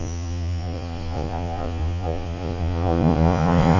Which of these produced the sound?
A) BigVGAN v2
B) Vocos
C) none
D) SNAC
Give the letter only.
B